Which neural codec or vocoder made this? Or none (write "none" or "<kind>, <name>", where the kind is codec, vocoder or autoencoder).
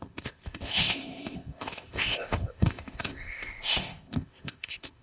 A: codec, ZipCodec